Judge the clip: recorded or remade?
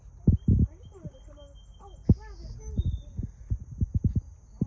recorded